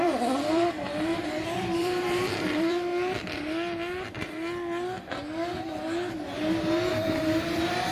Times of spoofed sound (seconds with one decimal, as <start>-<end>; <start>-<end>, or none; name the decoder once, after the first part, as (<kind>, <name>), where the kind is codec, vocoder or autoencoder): 0.0-2.9 (vocoder, BigVGAN v2); 6.9-7.9